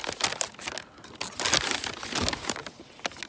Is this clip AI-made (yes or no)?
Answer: no